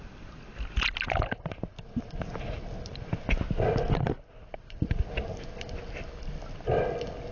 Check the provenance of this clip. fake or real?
real